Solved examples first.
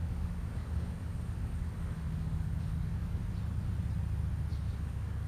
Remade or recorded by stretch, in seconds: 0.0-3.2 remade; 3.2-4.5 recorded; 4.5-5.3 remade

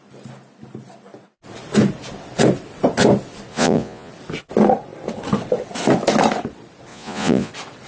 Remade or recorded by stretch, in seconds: 0.0-3.5 recorded; 3.5-4.1 remade; 4.1-6.9 recorded; 6.9-7.5 remade; 7.5-7.9 recorded

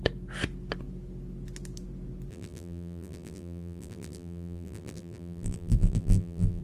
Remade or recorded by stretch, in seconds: 0.0-2.3 recorded; 2.3-6.6 remade

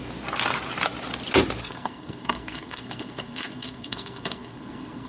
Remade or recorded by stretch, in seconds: 0.0-1.6 recorded; 1.6-5.1 remade

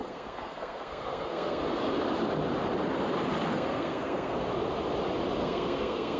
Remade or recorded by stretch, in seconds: 0.0-1.6 remade; 1.6-3.5 recorded; 3.5-4.5 remade; 4.5-5.4 recorded; 5.4-6.2 remade

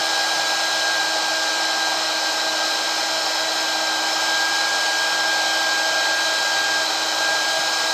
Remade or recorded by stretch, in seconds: 0.0-7.9 recorded